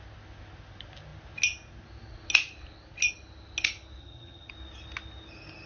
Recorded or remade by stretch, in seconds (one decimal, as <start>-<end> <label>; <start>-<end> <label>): 0.0-4.0 recorded; 4.0-4.5 remade; 4.5-5.7 recorded